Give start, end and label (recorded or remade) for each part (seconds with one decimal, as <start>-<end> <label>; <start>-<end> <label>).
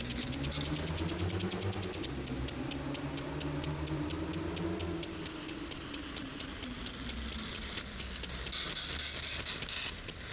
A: 0.0-10.3 recorded